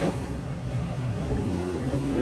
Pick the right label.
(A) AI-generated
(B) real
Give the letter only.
A